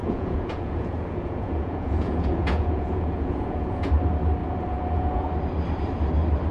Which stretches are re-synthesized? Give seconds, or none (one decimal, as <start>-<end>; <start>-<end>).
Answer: 0.0-3.9; 4.4-5.3